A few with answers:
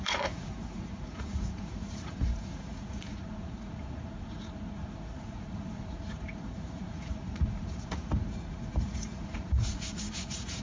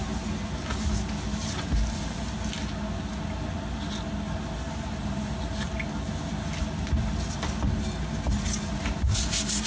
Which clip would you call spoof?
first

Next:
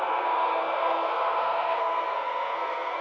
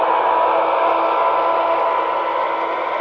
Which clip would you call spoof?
first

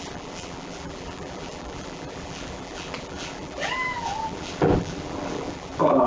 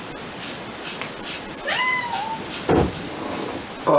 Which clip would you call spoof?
first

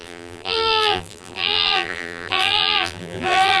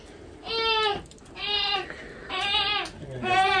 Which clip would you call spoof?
first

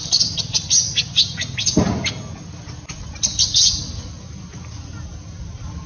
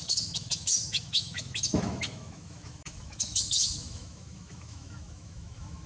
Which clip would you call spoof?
second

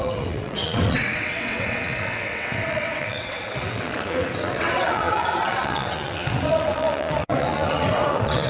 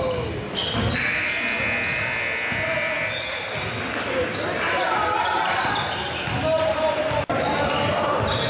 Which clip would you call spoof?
first